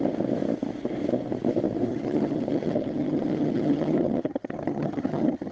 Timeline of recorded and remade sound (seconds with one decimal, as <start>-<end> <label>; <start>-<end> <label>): 0.0-1.9 recorded; 1.9-5.5 remade